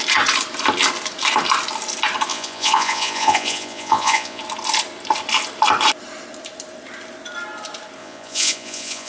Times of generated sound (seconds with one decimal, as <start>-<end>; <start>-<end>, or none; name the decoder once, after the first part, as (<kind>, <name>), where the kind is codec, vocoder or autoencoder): 2.3-4.4 (vocoder, Vocos); 8.0-9.1